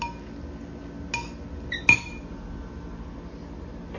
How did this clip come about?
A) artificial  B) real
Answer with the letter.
B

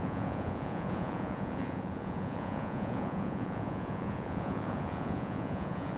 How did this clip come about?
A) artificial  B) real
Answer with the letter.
A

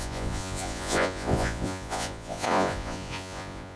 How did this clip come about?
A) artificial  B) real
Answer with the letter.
A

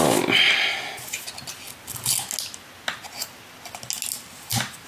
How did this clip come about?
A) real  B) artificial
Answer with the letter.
A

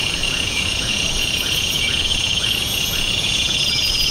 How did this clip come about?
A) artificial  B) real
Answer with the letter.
A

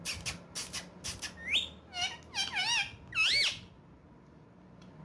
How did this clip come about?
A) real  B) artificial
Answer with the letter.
A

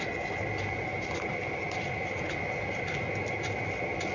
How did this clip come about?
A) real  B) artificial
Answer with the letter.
A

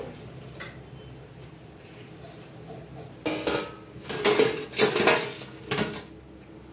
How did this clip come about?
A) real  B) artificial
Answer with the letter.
A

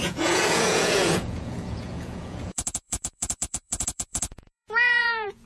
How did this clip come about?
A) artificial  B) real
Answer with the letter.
A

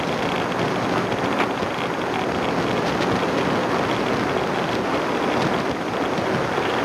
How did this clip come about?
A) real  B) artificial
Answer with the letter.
A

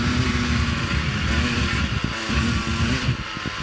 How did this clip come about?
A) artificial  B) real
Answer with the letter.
B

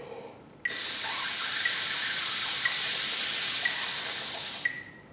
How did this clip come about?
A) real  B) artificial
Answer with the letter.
A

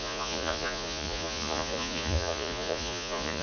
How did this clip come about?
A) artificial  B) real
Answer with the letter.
A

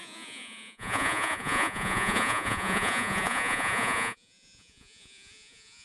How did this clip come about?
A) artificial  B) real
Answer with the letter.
A